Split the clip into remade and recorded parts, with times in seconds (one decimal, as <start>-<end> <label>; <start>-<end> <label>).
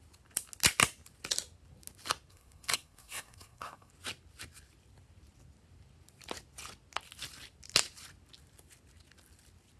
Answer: 0.0-2.3 recorded; 2.3-3.9 remade; 3.9-9.8 recorded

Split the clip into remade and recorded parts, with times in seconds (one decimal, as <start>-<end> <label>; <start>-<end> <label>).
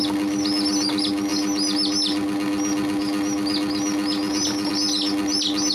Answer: 0.0-5.7 recorded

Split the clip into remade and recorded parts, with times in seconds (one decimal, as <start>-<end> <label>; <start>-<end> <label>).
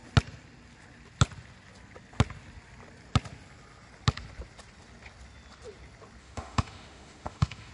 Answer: 0.0-6.2 recorded; 6.2-7.7 remade